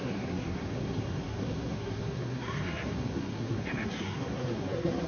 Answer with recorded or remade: remade